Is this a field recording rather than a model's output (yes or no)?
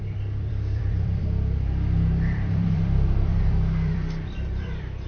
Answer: no